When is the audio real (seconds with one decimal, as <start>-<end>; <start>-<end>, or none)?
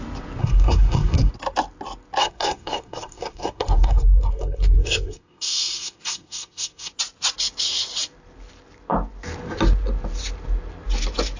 0.0-0.4; 1.3-2.2; 6.9-11.4